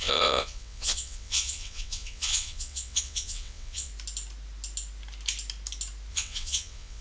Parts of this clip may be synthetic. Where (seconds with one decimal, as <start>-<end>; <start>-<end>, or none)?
0.0-3.9; 6.1-7.0